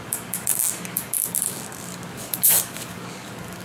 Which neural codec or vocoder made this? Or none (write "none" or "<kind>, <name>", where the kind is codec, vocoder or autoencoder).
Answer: codec, DAC